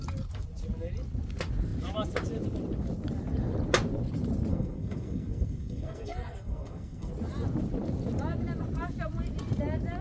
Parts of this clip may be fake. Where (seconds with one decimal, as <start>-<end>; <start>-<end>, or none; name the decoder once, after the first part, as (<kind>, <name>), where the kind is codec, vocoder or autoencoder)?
4.5-7.1 (codec, SNAC)